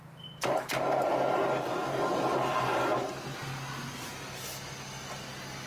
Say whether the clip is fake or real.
real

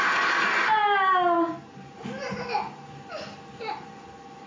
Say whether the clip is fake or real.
real